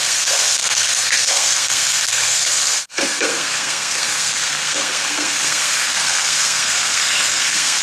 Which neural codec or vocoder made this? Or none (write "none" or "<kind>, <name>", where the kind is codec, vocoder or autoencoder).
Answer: codec, SNAC